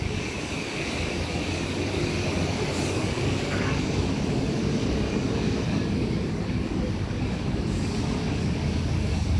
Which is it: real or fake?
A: fake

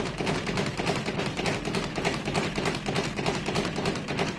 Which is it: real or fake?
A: real